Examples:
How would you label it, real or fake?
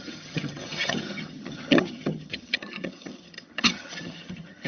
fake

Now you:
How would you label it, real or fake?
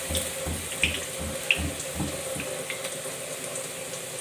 real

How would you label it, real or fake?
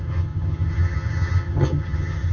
fake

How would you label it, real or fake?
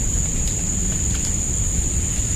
real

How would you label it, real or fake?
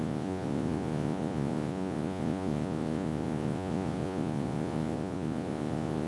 fake